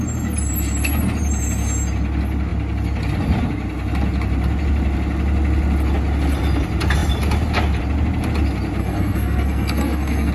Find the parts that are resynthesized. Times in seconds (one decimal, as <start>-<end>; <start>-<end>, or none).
8.8-10.3

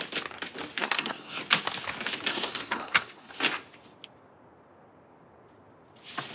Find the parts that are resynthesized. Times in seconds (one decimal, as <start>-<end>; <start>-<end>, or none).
0.8-1.4; 2.3-3.3